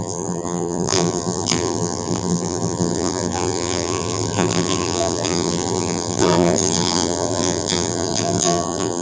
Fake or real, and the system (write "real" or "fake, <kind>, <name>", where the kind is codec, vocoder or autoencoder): fake, vocoder, BigVGAN v2